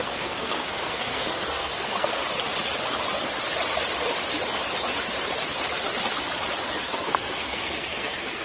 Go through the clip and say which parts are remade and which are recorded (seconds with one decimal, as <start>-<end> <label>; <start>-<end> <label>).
0.0-2.2 remade; 2.2-6.7 recorded; 6.7-8.4 remade